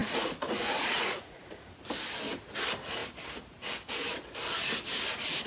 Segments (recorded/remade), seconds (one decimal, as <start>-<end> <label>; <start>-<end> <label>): 0.0-1.8 remade; 1.8-5.5 recorded